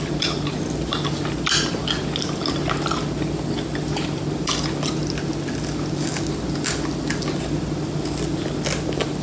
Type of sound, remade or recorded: recorded